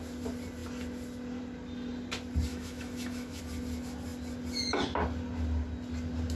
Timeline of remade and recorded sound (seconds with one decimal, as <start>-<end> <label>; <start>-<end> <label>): 0.0-2.5 recorded; 2.5-3.4 remade; 3.4-6.4 recorded